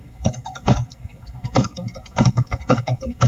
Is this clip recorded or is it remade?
remade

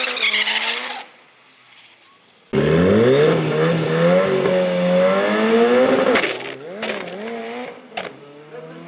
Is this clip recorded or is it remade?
recorded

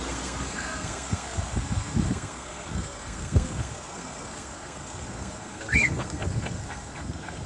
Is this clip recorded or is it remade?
remade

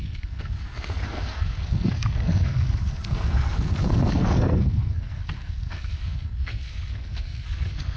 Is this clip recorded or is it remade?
remade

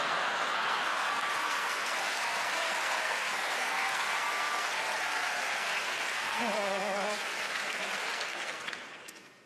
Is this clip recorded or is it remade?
remade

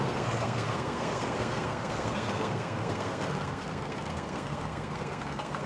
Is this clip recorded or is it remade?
remade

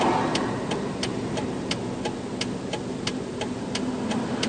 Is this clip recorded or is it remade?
recorded